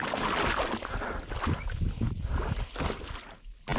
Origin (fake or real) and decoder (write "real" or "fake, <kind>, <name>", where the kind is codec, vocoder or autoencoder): real